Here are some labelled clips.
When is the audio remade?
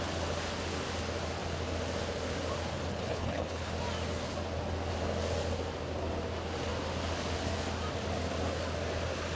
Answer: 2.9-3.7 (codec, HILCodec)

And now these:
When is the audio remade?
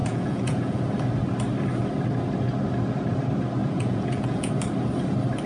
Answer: 0.0-0.8 (vocoder, Vocos); 3.6-4.5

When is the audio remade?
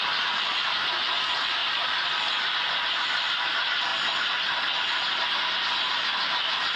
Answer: 1.6-2.3 (vocoder, BigVGAN v2)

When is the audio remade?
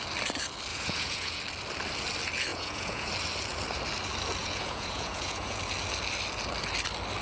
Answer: 0.7-1.4 (vocoder, Vocos); 2.5-3.1; 4.4-5.6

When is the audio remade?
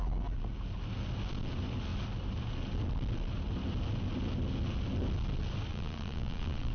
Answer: 5.7-6.7 (vocoder, Vocos)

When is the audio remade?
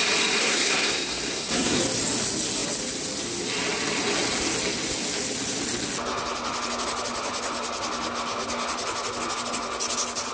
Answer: 0.4-1.8 (codec, SNAC)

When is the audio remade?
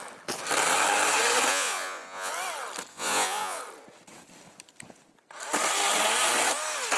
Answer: 1.5-2.3 (vocoder, Vocos); 2.9-3.6